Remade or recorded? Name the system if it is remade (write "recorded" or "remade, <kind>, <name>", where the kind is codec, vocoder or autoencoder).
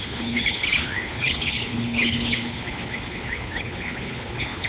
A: remade, codec, HILCodec